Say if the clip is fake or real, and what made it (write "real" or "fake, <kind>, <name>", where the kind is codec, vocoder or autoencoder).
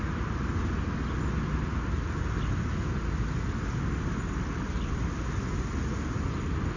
real